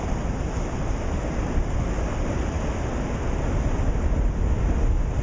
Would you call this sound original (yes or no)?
yes